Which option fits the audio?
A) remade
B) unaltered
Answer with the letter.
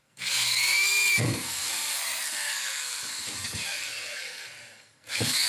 A